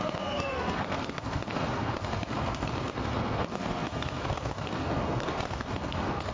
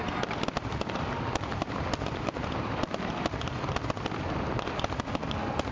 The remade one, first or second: first